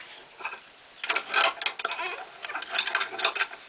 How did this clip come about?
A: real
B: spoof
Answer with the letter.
A